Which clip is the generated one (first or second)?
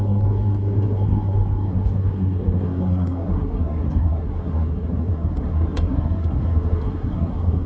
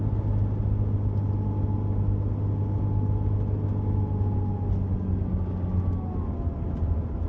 first